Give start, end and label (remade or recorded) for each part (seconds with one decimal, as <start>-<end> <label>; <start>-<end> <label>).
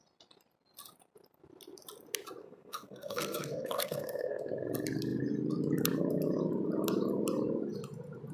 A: 0.0-2.4 recorded; 2.4-4.5 remade; 4.5-8.3 recorded